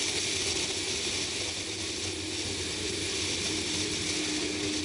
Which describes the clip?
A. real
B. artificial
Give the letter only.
A